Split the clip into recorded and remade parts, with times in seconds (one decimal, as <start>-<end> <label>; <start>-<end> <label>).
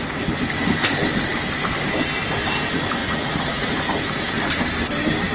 0.0-3.0 recorded; 3.0-3.7 remade; 3.7-5.3 recorded